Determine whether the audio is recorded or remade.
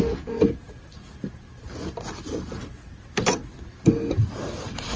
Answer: recorded